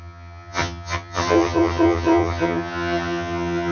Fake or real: fake